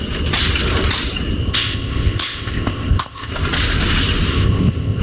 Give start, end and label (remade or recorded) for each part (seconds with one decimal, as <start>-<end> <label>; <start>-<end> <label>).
0.0-1.5 recorded; 1.5-3.3 remade; 3.3-4.3 recorded; 4.3-5.0 remade